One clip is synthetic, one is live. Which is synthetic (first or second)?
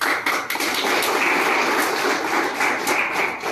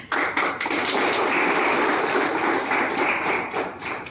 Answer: second